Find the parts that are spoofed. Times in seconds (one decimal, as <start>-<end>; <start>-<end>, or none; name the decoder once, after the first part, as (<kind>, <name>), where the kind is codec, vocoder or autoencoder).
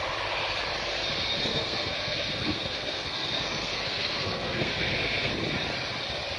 1.5-5.3 (codec, SNAC)